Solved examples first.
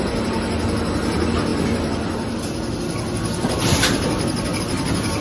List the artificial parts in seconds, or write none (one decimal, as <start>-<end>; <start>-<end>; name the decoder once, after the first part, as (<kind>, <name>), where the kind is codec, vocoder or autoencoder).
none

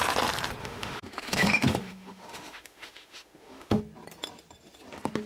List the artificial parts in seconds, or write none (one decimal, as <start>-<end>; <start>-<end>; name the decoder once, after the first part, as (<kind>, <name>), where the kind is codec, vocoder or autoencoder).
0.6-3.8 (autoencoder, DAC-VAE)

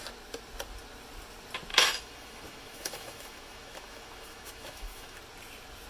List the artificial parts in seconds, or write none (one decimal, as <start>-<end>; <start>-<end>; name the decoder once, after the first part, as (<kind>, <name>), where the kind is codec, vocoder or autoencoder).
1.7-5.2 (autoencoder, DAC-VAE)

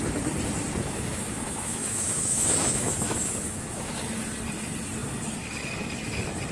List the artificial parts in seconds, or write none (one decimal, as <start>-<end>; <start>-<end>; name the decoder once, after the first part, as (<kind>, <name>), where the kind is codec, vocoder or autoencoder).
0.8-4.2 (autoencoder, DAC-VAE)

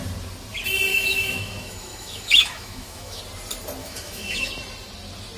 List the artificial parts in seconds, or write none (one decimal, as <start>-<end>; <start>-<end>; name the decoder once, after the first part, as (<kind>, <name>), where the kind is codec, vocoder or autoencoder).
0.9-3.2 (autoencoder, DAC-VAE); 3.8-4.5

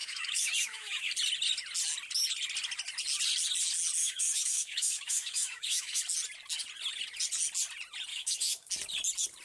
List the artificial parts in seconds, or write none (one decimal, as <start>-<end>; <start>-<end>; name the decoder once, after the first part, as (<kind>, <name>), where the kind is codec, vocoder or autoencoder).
0.0-1.1 (autoencoder, DAC-VAE); 4.0-6.0; 8.1-8.7

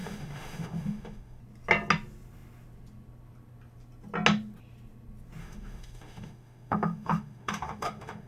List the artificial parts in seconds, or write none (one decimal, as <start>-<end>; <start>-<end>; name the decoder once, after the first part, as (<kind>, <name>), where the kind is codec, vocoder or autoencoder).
0.0-1.4 (autoencoder, DAC-VAE); 5.4-8.3

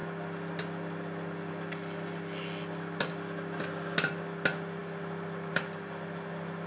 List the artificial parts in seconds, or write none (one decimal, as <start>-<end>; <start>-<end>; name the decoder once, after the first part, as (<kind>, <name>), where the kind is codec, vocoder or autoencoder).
none